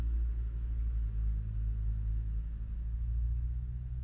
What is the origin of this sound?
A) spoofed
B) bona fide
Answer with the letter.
B